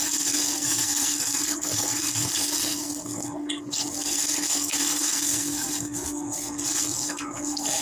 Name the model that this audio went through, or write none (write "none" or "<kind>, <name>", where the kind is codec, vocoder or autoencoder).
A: codec, SNAC